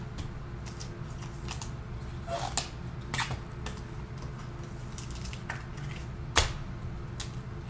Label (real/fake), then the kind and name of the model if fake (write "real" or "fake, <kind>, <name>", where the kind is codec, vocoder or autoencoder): real